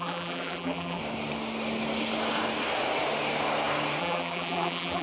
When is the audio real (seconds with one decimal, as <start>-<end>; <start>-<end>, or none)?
1.0-4.0